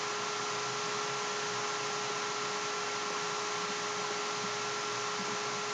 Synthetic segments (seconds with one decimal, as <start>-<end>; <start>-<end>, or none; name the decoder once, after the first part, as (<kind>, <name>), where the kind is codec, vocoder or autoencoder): none